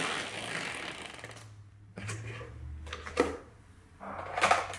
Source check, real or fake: real